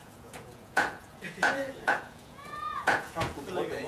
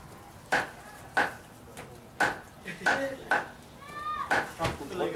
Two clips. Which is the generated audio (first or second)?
first